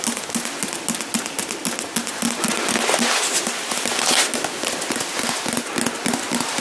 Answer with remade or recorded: recorded